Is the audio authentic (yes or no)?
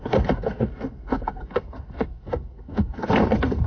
no